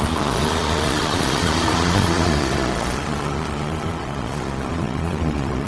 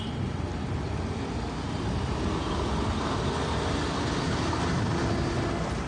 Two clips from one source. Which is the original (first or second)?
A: second